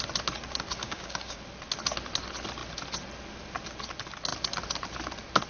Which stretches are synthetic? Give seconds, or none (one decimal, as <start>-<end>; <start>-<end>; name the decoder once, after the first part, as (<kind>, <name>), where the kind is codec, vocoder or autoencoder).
0.8-1.4 (codec, DAC)